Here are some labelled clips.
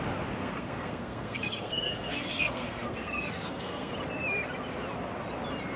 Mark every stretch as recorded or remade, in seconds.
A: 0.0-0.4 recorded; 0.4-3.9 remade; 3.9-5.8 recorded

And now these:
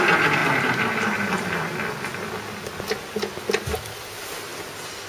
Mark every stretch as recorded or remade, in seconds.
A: 0.0-5.1 recorded

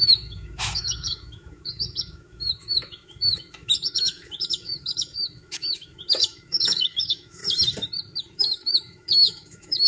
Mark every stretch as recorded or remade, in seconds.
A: 0.0-7.4 remade; 7.4-8.2 recorded; 8.2-9.9 remade

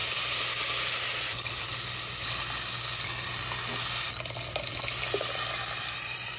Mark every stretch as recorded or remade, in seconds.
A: 0.0-6.4 recorded

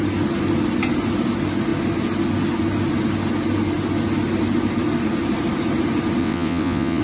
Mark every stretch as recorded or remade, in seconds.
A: 0.0-6.2 recorded; 6.2-7.0 remade

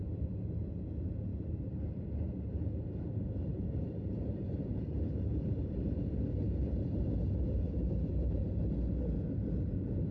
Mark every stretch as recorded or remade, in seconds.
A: 0.0-1.3 recorded; 1.3-1.9 remade; 1.9-3.5 recorded; 3.5-8.7 remade; 8.7-10.1 recorded